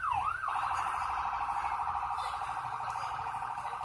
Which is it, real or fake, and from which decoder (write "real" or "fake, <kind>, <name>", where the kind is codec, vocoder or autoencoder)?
fake, vocoder, BigVGAN v2